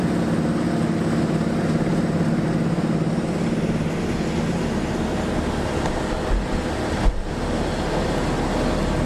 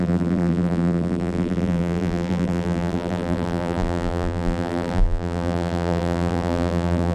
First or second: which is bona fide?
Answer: first